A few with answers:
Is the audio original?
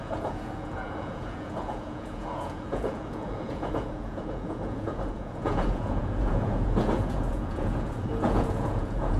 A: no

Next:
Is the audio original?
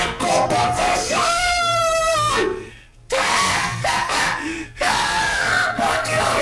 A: no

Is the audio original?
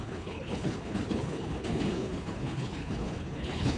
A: no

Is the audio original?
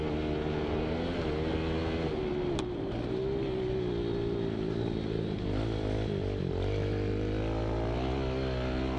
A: yes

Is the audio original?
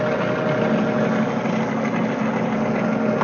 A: yes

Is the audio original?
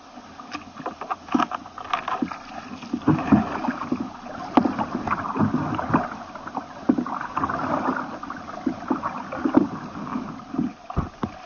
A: yes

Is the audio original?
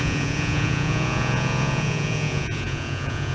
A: no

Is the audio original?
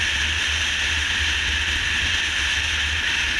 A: yes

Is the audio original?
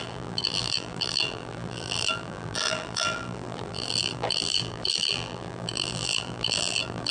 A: no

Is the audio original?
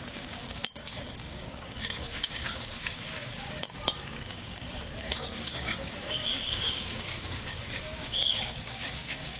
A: no